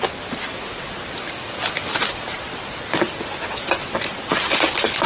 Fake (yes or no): no